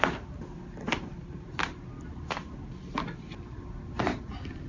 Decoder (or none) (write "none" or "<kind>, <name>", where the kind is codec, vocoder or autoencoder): none